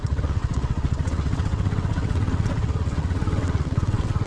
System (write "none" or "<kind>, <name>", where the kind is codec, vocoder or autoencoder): vocoder, WaveNeXt